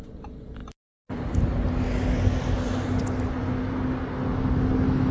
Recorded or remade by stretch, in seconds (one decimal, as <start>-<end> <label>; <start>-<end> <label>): 0.0-5.1 recorded